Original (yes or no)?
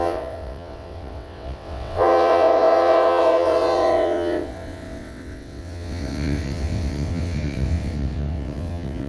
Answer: no